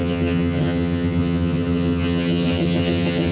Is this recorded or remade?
remade